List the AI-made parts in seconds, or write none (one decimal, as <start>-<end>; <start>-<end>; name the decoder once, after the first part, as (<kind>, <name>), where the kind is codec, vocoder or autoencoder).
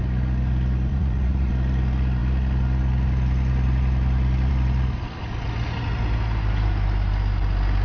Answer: 0.9-1.5 (vocoder, Vocos)